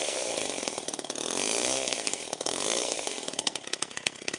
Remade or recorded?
remade